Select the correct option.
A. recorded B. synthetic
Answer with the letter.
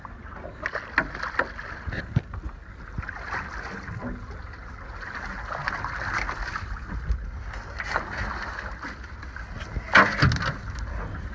A